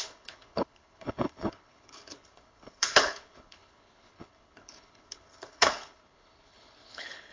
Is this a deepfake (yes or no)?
yes